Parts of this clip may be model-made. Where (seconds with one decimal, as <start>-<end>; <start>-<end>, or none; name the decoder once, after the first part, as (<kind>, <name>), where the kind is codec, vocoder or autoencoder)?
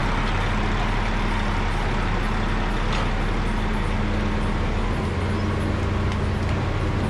none